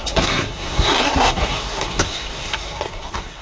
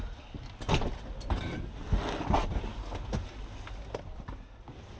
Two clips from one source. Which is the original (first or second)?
second